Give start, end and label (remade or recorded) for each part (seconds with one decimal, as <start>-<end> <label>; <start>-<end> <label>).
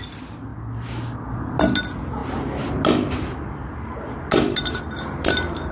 0.0-5.7 recorded